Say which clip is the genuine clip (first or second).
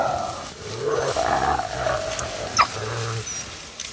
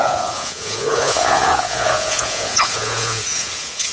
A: first